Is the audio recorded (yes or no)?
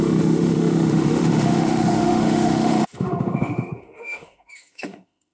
no